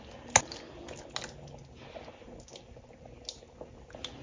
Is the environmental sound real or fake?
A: real